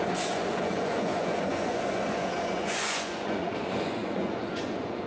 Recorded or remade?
remade